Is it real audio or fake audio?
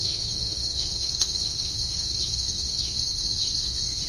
fake